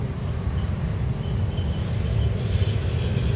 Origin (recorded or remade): recorded